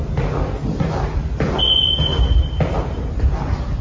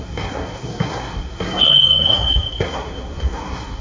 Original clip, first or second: first